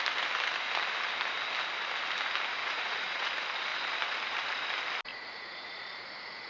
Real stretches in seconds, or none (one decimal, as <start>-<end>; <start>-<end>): 0.0-2.6; 3.3-5.1